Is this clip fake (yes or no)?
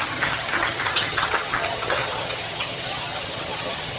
yes